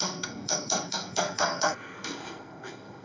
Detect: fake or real fake